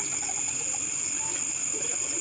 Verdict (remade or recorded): recorded